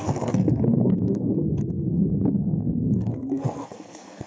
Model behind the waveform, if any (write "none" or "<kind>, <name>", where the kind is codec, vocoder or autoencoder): codec, SNAC